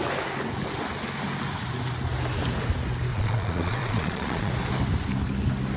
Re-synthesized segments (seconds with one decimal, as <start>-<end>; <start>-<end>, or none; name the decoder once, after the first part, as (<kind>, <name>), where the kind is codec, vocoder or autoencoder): 3.1-4.5 (vocoder, Vocos)